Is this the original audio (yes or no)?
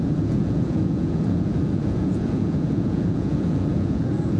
no